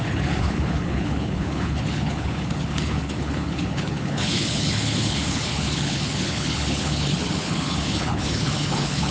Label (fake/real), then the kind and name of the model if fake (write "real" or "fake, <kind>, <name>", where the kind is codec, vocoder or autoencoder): fake, codec, HILCodec